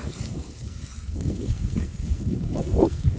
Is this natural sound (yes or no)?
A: no